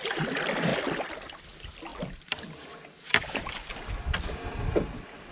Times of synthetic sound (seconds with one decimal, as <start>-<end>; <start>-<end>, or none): 0.7-1.4